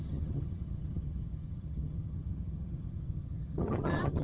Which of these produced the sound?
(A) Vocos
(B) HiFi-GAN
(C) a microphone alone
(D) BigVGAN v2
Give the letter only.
B